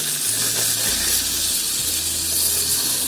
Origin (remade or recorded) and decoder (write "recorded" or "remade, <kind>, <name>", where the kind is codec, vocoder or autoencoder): recorded